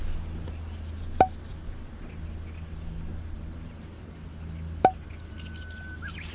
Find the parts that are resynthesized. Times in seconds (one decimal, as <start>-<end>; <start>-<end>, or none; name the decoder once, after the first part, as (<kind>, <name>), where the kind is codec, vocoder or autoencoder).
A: none